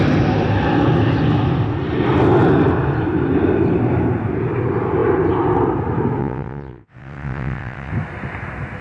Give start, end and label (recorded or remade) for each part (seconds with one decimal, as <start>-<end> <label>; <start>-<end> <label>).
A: 0.0-6.2 recorded; 6.2-7.9 remade; 7.9-8.8 recorded